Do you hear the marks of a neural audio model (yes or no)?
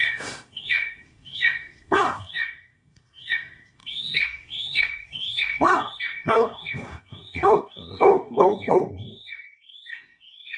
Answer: yes